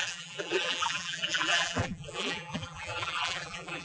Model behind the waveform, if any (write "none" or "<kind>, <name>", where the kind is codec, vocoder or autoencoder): vocoder, BigVGAN v2